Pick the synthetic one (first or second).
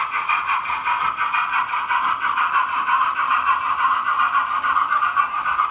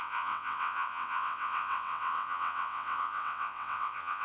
second